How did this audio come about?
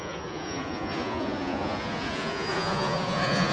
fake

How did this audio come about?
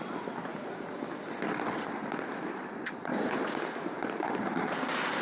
real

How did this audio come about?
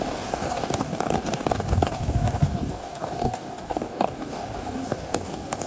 fake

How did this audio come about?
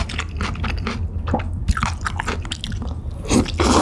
real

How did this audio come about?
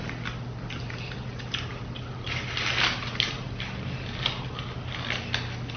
real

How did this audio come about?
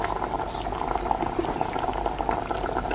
real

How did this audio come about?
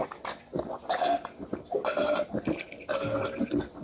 real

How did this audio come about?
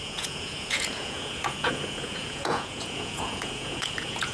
fake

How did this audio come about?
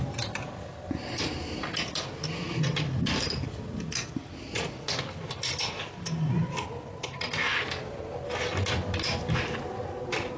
real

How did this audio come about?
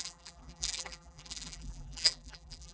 fake